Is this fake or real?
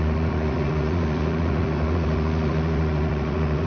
fake